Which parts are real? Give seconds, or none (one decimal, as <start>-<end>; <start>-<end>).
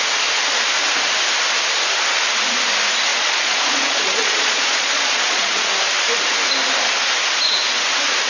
0.0-3.1; 5.7-8.3